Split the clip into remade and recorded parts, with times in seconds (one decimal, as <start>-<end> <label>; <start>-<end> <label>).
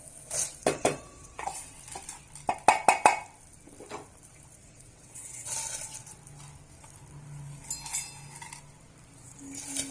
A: 0.0-0.6 recorded; 0.6-1.8 remade; 1.8-4.6 recorded; 4.6-5.5 remade; 5.5-9.9 recorded